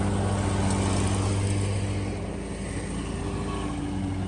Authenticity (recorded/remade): recorded